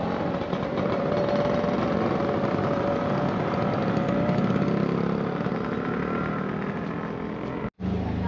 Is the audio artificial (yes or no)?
no